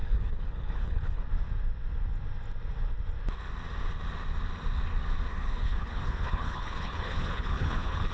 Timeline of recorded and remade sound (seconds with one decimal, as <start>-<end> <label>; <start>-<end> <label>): 0.0-1.2 remade; 1.2-5.3 recorded; 5.3-8.1 remade